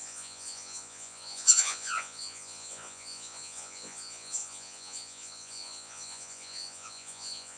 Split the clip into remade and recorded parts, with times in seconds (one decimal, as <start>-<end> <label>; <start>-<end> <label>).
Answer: 0.0-7.6 remade